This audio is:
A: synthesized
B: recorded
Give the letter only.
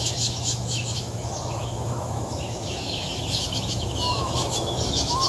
A